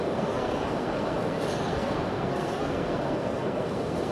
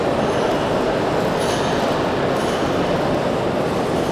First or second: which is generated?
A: first